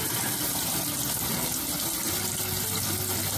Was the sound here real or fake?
real